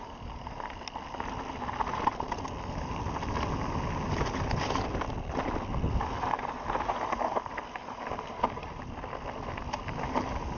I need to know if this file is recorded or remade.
recorded